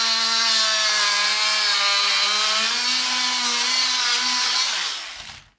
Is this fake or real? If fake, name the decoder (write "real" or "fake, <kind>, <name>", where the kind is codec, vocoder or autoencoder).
real